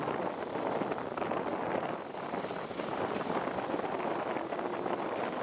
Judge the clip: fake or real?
real